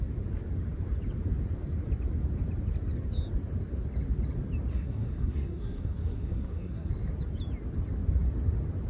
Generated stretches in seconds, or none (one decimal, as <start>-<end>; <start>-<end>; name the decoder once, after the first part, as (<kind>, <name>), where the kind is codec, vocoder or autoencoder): 4.7-6.9 (codec, SNAC)